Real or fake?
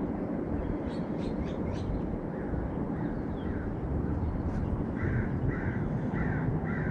fake